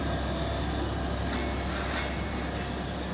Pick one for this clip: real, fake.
real